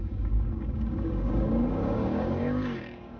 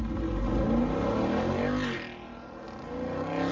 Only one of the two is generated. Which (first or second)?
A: first